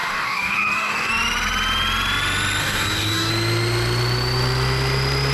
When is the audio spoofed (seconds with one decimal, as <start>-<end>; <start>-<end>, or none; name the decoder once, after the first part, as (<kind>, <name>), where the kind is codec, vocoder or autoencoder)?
0.0-1.1 (codec, DAC); 2.6-3.3